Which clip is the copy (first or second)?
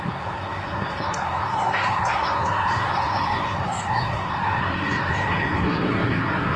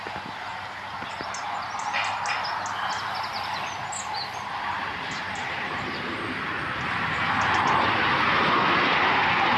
first